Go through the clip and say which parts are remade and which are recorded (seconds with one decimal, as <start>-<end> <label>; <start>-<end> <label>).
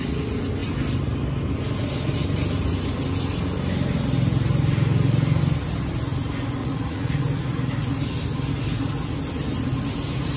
0.0-6.6 recorded; 6.6-7.2 remade; 7.2-10.4 recorded